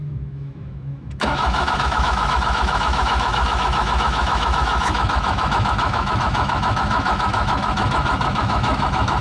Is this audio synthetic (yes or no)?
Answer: yes